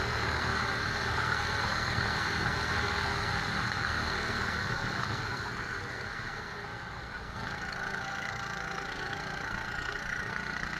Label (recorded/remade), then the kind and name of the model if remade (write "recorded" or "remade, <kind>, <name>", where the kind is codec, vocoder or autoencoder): remade, codec, SNAC